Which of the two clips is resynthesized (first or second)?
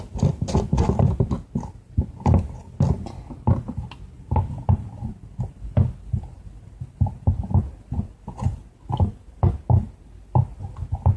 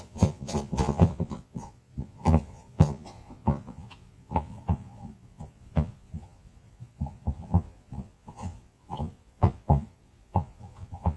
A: second